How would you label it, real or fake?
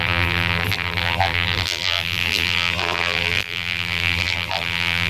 fake